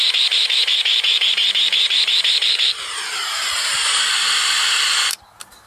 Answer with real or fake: fake